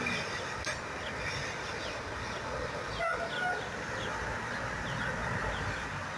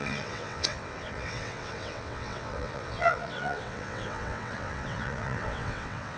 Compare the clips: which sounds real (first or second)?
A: first